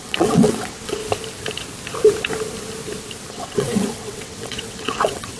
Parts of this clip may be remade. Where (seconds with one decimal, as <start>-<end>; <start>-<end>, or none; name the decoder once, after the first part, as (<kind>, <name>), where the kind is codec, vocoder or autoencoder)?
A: 0.0-1.0 (vocoder, WaveNeXt); 3.3-5.4

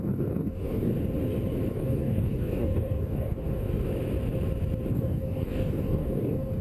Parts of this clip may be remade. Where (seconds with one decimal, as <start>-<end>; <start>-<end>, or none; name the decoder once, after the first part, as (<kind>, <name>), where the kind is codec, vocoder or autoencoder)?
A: 0.0-0.9 (codec, DAC); 1.7-3.9; 4.9-6.6

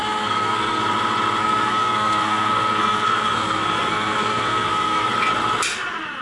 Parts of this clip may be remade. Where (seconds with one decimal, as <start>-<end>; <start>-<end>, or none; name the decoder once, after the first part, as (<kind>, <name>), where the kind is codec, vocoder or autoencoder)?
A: 0.0-0.8 (codec, SNAC); 1.4-5.1

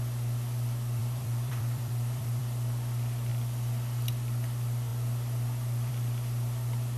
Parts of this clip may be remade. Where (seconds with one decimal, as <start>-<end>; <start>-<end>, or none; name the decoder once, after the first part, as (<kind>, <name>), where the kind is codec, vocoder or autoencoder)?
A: 1.0-2.4 (vocoder, BigVGAN v2)

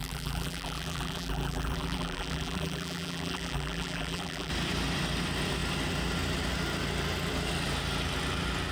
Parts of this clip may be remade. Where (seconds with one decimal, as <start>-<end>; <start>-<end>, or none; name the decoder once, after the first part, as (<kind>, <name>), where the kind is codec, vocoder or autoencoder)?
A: 0.0-4.5 (vocoder, BigVGAN v2)

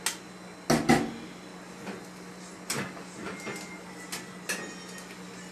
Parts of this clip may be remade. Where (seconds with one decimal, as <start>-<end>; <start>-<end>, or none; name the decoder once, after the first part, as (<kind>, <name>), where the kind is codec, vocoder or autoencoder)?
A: none